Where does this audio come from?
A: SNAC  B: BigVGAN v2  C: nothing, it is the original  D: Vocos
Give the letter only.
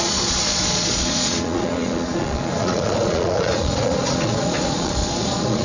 D